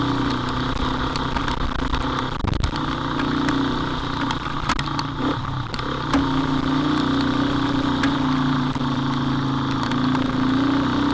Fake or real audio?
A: real